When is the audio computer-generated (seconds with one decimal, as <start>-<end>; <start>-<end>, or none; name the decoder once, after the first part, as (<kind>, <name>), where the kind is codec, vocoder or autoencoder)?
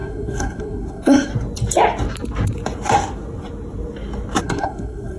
0.0-1.3 (codec, SNAC); 4.4-5.2